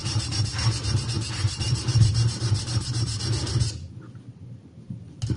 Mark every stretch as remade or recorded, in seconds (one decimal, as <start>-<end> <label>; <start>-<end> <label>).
0.0-3.2 remade; 3.2-5.4 recorded